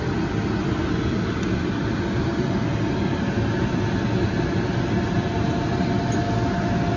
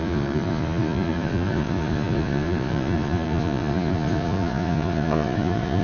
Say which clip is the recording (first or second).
first